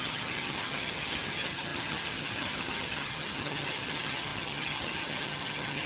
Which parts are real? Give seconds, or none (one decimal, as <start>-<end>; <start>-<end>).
none